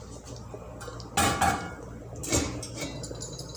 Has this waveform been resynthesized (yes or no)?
no